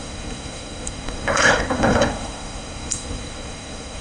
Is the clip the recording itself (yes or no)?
no